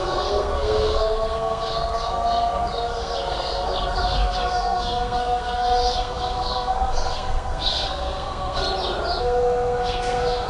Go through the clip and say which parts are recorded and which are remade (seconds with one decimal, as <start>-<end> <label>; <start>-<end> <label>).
0.0-8.6 remade; 8.6-9.2 recorded; 9.2-10.5 remade